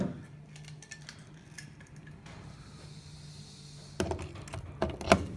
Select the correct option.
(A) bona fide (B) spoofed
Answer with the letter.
A